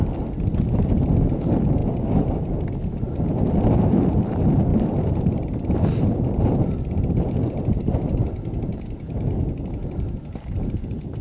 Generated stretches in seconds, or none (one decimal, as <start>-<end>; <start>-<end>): 4.7-7.3; 8.7-9.4